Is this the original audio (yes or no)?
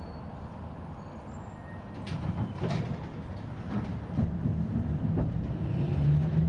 yes